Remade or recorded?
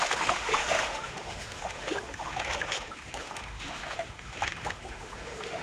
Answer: remade